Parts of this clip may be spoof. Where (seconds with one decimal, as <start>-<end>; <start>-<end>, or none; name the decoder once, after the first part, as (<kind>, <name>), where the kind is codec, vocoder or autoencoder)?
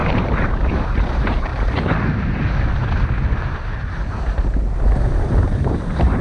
0.0-1.5 (vocoder, BigVGAN v2); 5.2-6.2